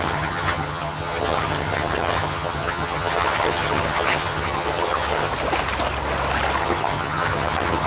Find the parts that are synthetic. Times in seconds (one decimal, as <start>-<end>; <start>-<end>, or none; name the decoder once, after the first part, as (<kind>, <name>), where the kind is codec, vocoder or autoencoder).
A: 0.0-5.3 (vocoder, HiFi-GAN); 6.6-7.9